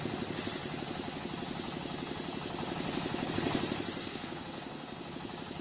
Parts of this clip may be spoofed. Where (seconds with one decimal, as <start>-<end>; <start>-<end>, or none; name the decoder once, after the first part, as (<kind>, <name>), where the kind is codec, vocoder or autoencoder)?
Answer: 4.0-5.1 (codec, SNAC)

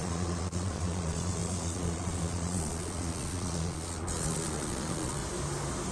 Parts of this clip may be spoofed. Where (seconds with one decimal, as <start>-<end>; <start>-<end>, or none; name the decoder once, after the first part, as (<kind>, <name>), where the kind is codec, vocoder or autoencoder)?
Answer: 0.0-5.2 (vocoder, Vocos)

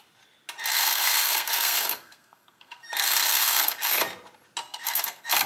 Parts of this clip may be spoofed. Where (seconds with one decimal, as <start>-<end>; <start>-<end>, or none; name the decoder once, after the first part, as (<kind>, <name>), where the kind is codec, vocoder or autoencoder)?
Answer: 0.7-4.0 (codec, SNAC); 4.6-5.5

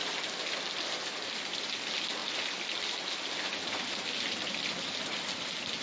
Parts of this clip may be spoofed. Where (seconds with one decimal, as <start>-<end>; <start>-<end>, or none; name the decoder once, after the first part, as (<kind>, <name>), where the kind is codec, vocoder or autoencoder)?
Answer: none

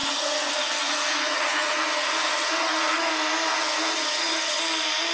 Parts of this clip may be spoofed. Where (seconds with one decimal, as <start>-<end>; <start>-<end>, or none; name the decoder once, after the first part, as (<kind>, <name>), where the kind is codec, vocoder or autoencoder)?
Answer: 0.0-3.1 (vocoder, HiFi-GAN); 3.5-4.6